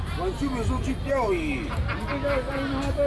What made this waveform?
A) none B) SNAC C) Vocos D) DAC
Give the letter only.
A